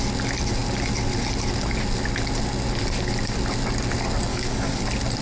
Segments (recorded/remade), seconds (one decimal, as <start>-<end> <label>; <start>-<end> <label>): 0.0-4.3 recorded; 4.3-4.8 remade; 4.8-5.2 recorded